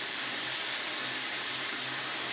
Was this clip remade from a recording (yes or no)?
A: yes